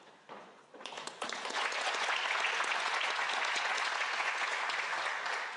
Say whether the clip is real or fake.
fake